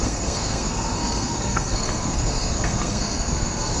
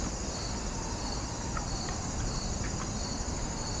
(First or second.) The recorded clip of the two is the second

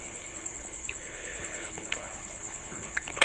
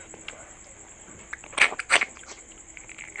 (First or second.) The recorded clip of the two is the second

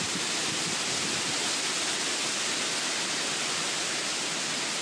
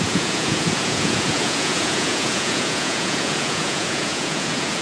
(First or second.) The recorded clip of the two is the first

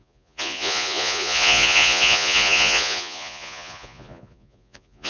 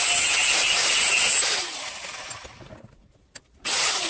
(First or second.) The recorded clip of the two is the second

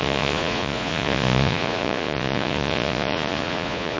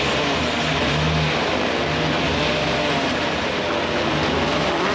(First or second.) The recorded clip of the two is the second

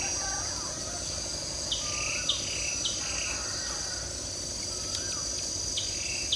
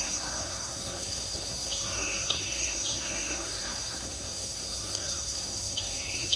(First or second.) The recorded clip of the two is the first